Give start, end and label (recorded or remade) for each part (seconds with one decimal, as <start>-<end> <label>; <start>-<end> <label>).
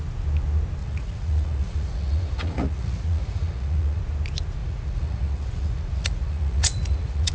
0.0-0.8 recorded; 0.8-4.0 remade; 4.0-4.6 recorded; 4.6-7.3 remade